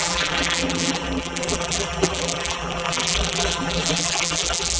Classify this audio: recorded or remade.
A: remade